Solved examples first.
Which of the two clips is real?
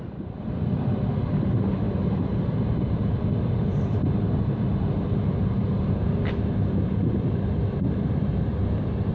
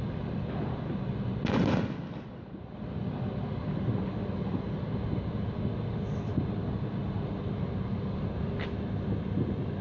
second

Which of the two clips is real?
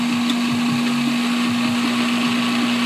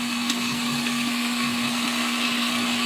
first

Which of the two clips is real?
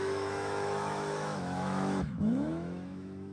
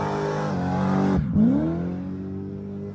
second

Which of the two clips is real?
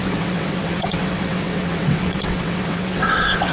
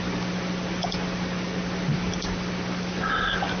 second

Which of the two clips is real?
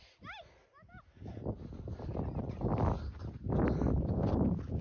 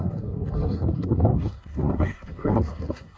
first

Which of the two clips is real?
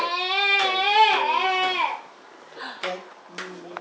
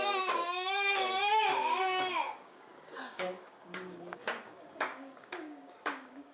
first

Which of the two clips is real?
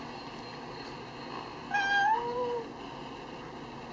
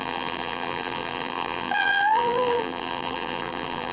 first